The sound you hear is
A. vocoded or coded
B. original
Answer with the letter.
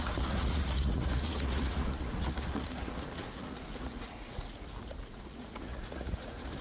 A